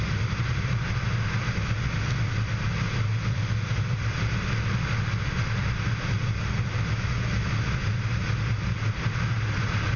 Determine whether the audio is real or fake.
real